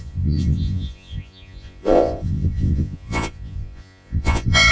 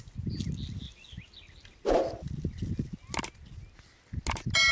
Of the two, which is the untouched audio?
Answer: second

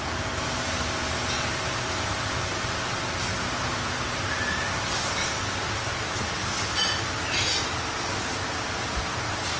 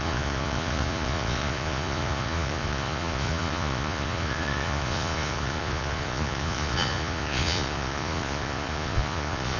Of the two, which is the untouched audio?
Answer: first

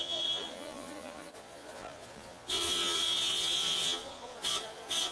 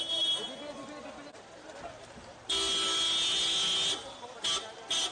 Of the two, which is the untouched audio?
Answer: second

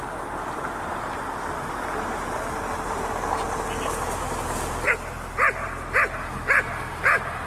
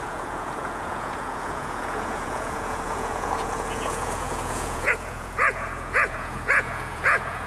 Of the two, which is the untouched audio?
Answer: first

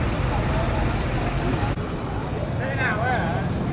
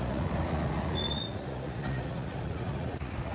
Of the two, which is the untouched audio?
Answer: first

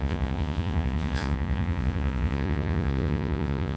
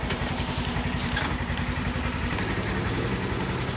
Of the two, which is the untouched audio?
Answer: second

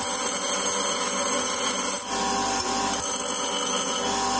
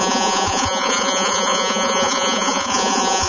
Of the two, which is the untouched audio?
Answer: first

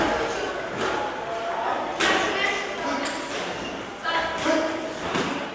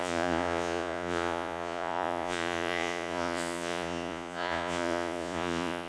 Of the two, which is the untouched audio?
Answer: first